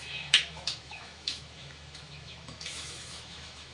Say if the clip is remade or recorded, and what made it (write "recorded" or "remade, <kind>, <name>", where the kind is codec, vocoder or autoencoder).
remade, autoencoder, DAC-VAE